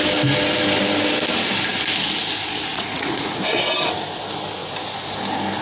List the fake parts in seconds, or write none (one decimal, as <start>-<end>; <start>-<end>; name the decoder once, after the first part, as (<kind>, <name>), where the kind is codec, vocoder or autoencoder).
2.7-3.4 (vocoder, Vocos)